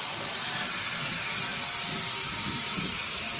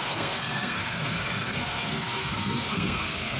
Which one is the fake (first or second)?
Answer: second